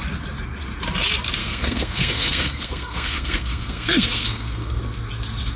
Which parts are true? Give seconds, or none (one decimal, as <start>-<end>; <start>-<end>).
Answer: 0.0-1.4; 4.8-5.6

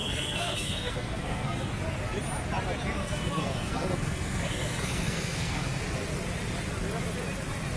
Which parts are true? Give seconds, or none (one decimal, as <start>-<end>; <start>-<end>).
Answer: 1.7-3.0; 5.8-7.8

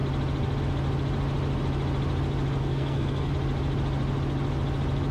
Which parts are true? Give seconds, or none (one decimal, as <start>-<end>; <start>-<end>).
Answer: 0.0-2.6; 3.3-5.1

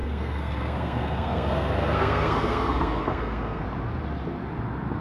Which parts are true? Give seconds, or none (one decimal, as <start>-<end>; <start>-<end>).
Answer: 3.6-5.0

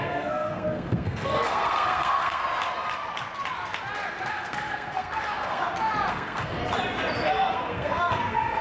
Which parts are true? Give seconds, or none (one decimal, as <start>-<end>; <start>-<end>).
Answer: 2.4-4.3; 5.6-6.1; 6.6-7.3

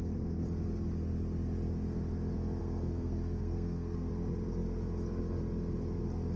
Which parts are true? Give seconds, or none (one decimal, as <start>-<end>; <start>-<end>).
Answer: 0.0-2.6; 4.1-6.4

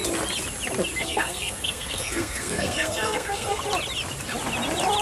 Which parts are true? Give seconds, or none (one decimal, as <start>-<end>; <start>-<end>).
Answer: 0.0-1.0; 3.6-5.0

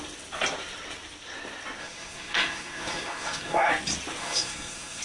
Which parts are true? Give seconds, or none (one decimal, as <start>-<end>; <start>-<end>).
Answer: 0.0-1.8; 3.7-4.2